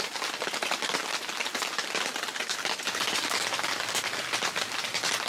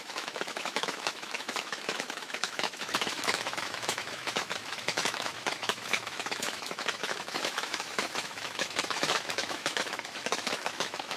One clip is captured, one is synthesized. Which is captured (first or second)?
first